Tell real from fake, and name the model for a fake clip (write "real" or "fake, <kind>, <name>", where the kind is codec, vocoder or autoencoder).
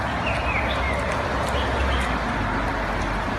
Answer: real